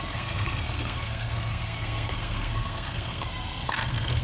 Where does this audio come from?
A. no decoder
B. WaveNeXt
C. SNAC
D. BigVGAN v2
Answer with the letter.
C